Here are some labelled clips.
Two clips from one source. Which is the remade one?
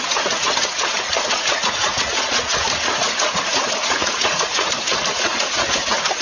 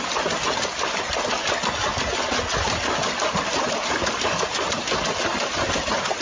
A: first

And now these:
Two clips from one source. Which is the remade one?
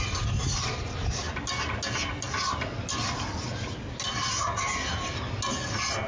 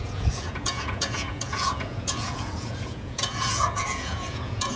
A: second